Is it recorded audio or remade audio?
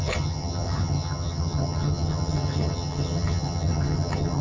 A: remade